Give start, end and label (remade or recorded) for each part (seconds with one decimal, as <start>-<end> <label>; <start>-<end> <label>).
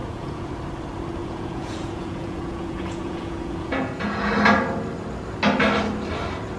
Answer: 0.0-0.5 remade; 0.5-1.2 recorded; 1.2-4.3 remade; 4.3-6.6 recorded